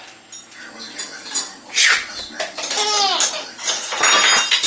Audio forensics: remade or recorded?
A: recorded